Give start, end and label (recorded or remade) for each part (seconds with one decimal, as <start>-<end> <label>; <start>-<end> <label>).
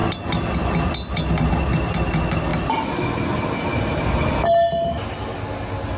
0.0-6.0 recorded